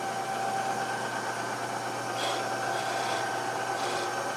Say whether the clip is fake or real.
real